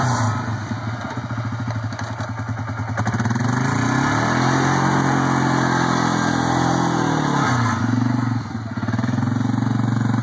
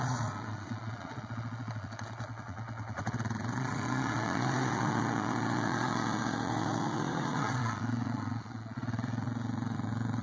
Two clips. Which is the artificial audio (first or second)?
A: second